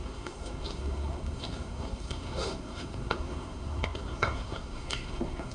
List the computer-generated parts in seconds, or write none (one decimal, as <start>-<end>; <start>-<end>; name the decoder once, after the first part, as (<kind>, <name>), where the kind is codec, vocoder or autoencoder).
0.0-5.5 (codec, SNAC)